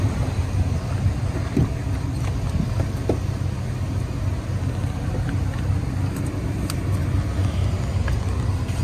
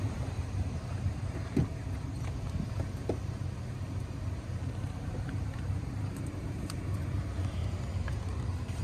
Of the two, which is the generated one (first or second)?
second